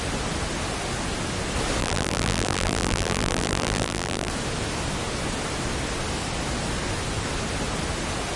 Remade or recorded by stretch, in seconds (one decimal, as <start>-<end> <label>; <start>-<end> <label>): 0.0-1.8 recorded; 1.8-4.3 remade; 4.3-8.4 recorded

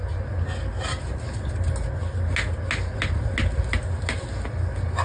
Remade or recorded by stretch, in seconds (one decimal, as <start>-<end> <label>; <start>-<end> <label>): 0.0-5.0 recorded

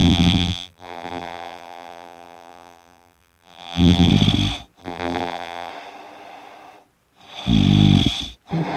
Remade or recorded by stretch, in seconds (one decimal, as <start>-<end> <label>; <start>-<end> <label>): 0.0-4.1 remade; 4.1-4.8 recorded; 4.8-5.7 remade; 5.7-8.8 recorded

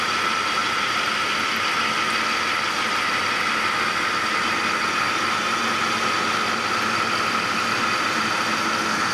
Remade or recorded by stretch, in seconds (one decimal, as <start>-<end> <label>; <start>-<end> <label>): 0.0-0.6 recorded; 0.6-1.2 remade; 1.2-9.1 recorded